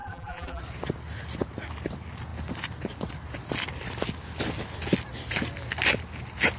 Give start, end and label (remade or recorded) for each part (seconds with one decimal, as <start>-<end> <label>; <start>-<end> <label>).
0.0-0.6 remade; 0.6-6.6 recorded